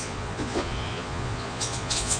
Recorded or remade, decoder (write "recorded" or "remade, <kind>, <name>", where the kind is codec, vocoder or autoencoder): remade, vocoder, Vocos